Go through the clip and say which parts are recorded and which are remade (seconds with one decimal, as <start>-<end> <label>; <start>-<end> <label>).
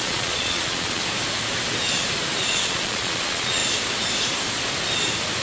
0.0-1.0 remade; 1.0-2.4 recorded; 2.4-3.6 remade; 3.6-5.4 recorded